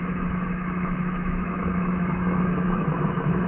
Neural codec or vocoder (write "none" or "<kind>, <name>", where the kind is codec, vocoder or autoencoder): autoencoder, DAC-VAE